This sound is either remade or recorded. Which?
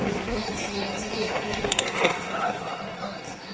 remade